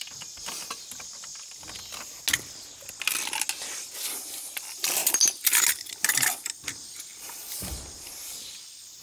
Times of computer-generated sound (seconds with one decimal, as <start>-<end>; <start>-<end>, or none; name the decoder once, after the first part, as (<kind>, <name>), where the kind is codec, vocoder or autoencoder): none